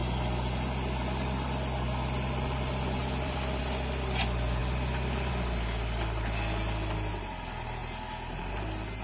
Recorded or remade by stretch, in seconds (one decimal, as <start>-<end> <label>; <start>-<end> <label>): 0.0-3.0 recorded; 3.0-3.6 remade; 3.6-4.6 recorded; 4.6-5.3 remade; 5.3-9.0 recorded